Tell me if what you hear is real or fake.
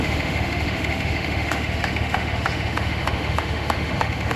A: fake